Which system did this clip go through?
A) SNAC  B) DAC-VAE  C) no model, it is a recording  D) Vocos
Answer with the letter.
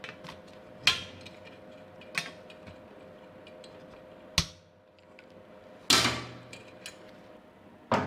C